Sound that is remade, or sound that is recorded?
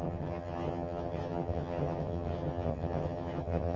remade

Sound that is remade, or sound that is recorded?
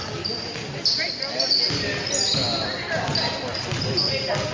recorded